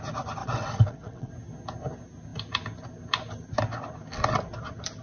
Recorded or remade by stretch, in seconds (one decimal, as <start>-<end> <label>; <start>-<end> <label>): 0.0-0.4 recorded; 0.4-1.3 remade; 1.3-5.0 recorded

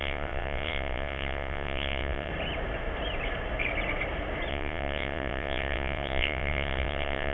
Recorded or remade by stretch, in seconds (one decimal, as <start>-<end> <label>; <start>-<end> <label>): 0.0-2.3 remade; 2.3-4.5 recorded; 4.5-7.3 remade